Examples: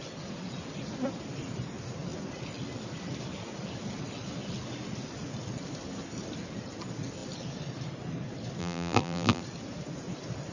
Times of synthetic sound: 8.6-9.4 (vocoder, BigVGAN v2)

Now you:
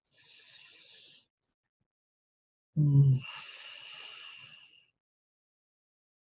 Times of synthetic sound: none

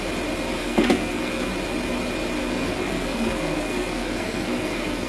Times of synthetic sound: 0.6-1.5 (codec, SNAC); 2.4-5.1